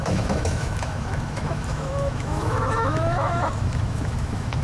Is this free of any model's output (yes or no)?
no